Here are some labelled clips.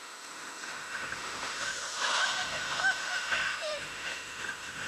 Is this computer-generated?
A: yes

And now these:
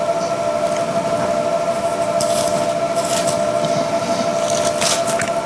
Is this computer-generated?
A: no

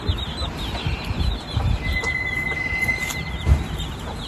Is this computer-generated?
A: no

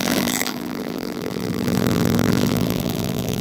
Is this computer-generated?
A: yes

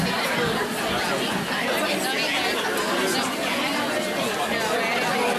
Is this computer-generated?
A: no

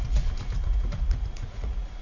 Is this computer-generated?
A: yes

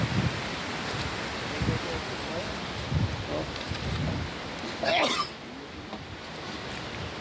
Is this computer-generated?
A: no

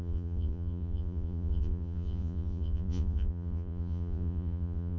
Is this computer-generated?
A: yes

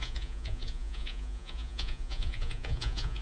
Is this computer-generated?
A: yes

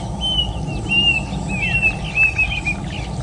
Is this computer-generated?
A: no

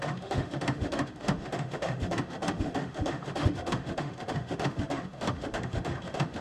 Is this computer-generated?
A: yes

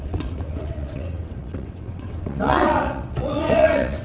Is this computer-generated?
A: yes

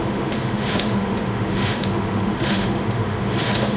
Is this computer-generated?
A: yes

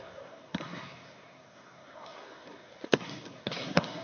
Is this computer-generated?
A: yes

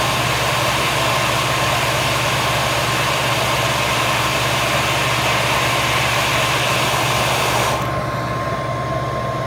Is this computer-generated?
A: no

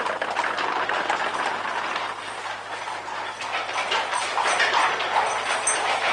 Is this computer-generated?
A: no